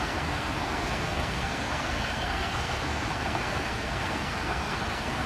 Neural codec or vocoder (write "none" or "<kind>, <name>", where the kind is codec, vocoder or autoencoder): codec, SNAC